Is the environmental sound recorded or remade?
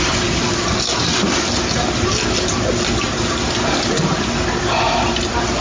recorded